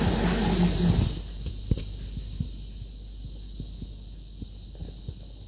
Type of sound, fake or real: real